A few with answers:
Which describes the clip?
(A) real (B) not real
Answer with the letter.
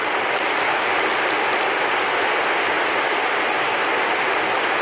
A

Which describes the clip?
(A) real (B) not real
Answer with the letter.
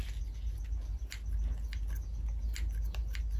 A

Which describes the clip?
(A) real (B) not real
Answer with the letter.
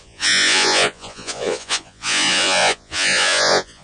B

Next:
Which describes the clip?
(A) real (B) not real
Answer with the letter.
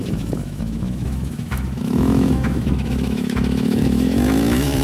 B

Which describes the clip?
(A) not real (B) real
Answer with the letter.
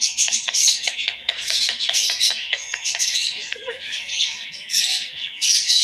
A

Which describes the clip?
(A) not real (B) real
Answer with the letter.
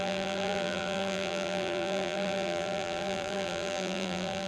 A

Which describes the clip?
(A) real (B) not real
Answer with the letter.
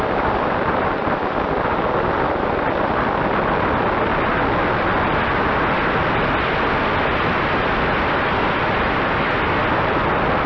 A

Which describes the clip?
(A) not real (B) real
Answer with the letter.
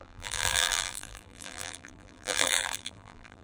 A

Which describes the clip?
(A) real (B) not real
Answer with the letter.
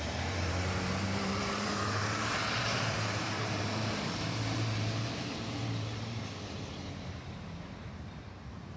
B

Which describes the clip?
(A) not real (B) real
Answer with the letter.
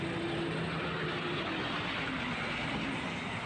B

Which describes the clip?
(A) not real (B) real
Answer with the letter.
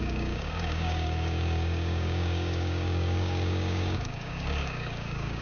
A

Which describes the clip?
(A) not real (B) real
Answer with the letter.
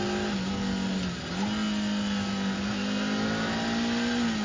B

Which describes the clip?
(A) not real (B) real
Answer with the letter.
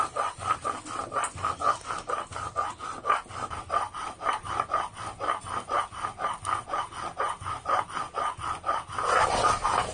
B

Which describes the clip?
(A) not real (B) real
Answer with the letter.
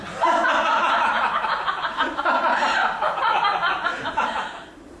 A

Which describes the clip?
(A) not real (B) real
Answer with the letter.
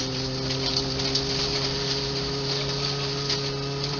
B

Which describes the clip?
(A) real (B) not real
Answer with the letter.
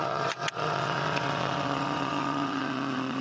B